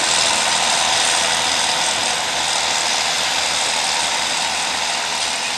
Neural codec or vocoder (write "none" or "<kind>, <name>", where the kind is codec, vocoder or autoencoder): none